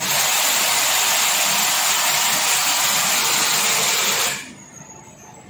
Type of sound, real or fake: real